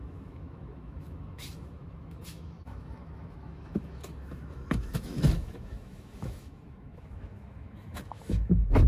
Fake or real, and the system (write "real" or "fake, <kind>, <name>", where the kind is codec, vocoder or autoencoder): fake, autoencoder, DAC-VAE